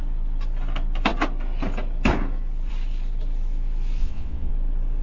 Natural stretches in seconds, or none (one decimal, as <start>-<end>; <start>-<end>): 0.0-4.0; 4.5-5.0